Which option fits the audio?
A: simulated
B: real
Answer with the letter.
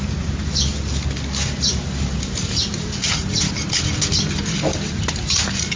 B